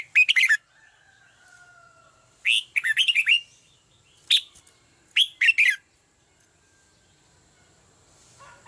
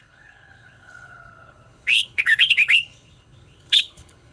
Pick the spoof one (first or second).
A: second